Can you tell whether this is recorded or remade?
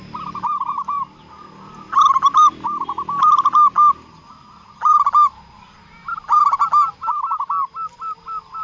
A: recorded